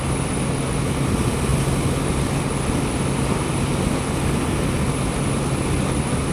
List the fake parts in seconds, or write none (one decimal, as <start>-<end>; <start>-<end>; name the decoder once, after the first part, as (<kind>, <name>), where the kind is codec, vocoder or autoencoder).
none